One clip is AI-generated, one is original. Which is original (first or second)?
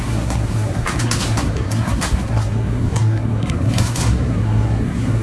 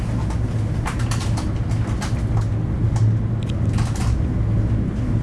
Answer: second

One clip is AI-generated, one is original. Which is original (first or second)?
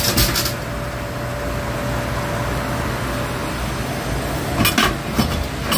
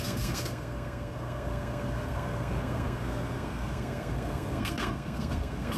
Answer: first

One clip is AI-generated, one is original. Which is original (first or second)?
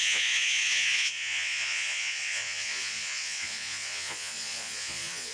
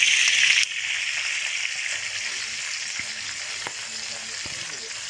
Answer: second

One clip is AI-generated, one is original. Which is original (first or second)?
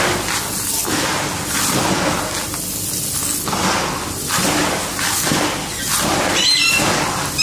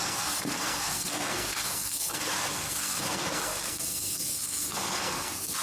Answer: first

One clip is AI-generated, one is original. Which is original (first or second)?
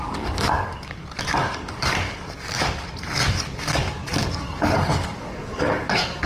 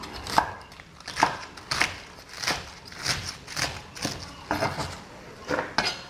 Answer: second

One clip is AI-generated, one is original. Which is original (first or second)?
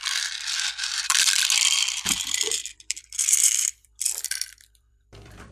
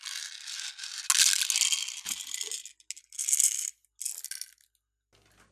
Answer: second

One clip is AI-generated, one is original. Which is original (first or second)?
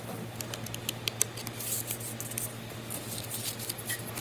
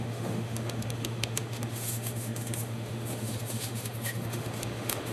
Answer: first